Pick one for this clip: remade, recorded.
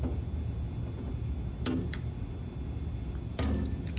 recorded